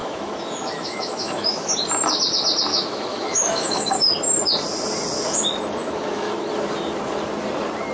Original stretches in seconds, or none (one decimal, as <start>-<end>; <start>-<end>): 1.7-2.7; 3.9-5.8; 6.5-7.9